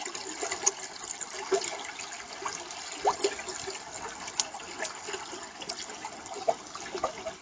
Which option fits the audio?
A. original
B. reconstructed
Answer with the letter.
A